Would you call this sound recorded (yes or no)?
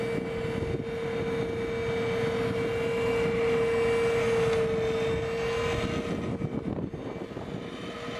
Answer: yes